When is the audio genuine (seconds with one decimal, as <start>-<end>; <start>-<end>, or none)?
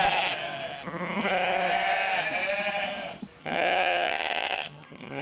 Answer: 0.0-3.4